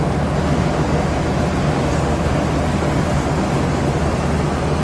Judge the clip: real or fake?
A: real